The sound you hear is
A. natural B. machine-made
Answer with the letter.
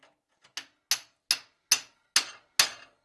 A